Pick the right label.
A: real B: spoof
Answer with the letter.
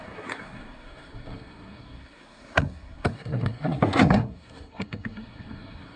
B